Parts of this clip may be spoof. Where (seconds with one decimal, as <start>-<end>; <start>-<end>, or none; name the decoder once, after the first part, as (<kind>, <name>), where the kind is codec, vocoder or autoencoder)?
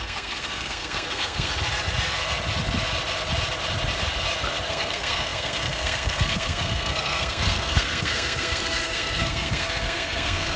0.0-1.5 (codec, SNAC); 4.7-10.6